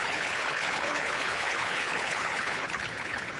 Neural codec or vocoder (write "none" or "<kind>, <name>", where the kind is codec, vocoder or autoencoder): codec, HILCodec